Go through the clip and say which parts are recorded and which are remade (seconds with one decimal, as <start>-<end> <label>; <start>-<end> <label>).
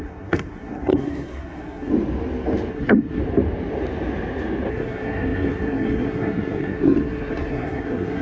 0.0-1.9 remade; 1.9-2.7 recorded; 2.7-3.2 remade; 3.2-4.7 recorded; 4.7-8.2 remade